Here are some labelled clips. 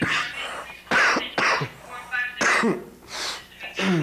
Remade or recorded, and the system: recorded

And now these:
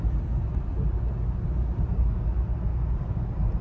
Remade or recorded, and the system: recorded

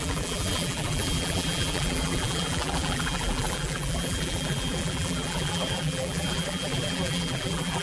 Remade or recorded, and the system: remade, vocoder, BigVGAN v2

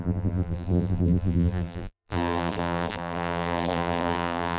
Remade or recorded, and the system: remade, vocoder, BigVGAN v2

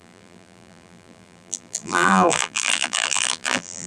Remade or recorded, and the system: remade, vocoder, BigVGAN v2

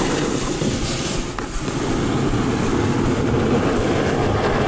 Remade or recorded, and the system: recorded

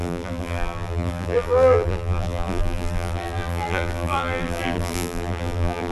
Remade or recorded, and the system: remade, vocoder, BigVGAN v2